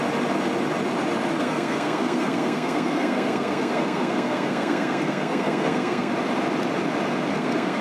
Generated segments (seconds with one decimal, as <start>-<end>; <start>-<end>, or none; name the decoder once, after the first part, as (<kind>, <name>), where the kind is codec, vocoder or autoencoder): 1.4-6.1 (codec, SNAC); 7.3-7.8